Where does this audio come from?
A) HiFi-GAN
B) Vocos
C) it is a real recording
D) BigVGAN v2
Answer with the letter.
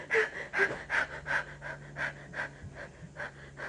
C